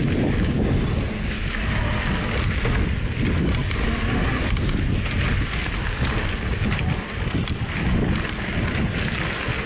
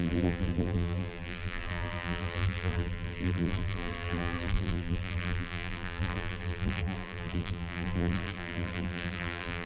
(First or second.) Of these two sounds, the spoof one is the second